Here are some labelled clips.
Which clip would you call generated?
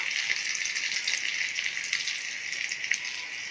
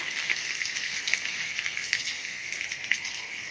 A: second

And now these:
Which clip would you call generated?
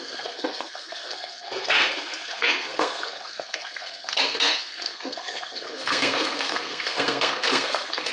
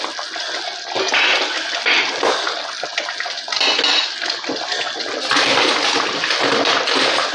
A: first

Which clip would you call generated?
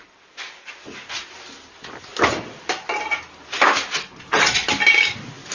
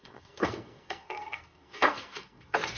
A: second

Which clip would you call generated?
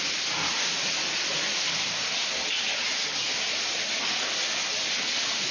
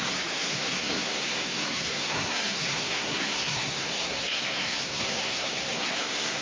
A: second